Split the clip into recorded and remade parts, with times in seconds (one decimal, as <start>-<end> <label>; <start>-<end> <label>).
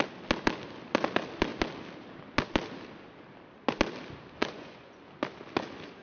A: 0.0-4.4 recorded; 4.4-5.0 remade; 5.0-6.0 recorded